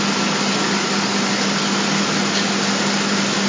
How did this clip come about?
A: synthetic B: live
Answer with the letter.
B